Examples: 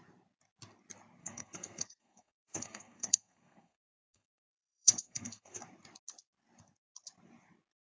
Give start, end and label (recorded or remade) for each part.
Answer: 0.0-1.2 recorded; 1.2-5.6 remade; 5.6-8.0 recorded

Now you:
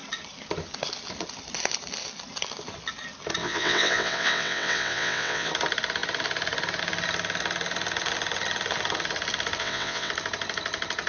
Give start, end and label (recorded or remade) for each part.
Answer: 0.0-3.4 recorded; 3.4-5.5 remade; 5.5-9.6 recorded; 9.6-10.1 remade; 10.1-11.1 recorded

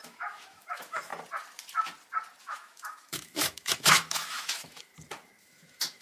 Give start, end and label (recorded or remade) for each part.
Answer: 0.0-1.1 remade; 1.1-2.4 recorded; 2.4-4.9 remade; 4.9-5.4 recorded; 5.4-6.0 remade

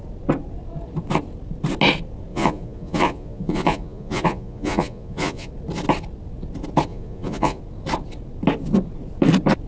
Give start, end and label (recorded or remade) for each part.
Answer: 0.0-2.3 recorded; 2.3-5.5 remade; 5.5-6.9 recorded; 6.9-7.6 remade; 7.6-9.7 recorded

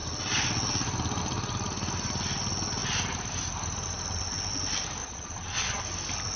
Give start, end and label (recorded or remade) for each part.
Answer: 0.0-5.0 recorded; 5.0-5.8 remade; 5.8-6.4 recorded